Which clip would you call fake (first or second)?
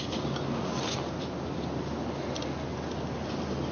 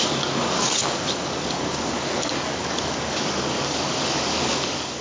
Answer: second